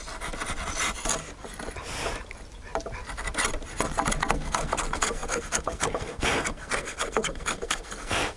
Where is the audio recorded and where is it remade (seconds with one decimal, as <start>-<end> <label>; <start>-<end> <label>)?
0.0-4.3 recorded; 4.3-8.4 remade